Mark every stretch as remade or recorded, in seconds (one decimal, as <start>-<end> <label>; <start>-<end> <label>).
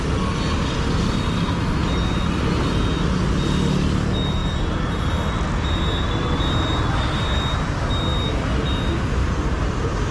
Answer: 0.0-4.4 recorded; 4.4-5.1 remade; 5.1-10.1 recorded